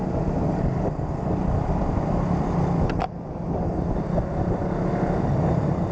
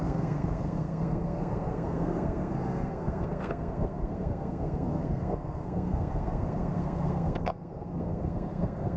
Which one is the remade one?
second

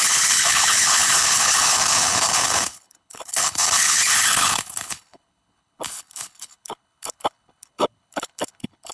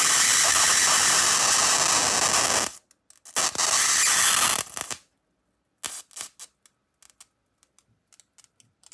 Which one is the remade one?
first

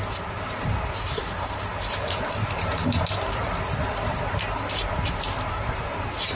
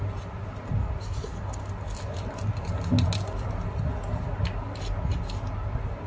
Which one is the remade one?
first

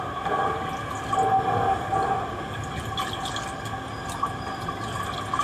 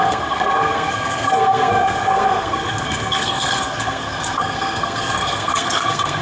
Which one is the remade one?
second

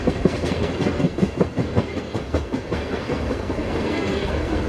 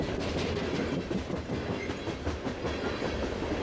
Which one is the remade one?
first